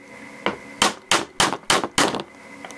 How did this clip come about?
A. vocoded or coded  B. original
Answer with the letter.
B